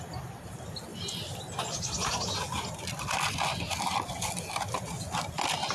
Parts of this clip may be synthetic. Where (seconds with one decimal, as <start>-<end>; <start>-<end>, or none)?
none